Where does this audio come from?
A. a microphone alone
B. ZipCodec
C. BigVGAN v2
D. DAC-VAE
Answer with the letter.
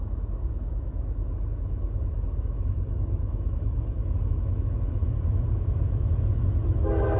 D